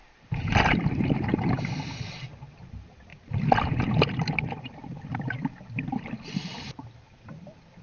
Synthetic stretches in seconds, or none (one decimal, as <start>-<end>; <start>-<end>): 0.0-0.6; 3.1-7.8